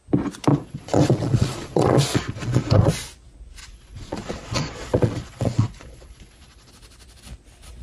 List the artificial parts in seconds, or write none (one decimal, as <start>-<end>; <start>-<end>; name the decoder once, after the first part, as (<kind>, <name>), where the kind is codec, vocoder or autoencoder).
0.5-2.9 (vocoder, Vocos); 3.6-6.7